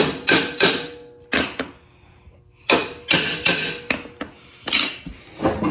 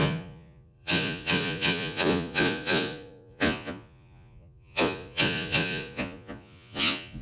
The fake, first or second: second